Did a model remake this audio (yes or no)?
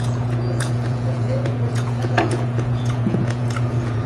yes